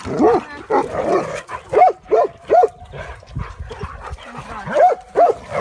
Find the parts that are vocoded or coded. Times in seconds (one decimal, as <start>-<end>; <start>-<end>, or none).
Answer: none